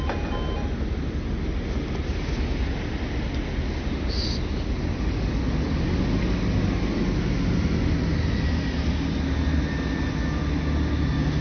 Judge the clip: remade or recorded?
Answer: recorded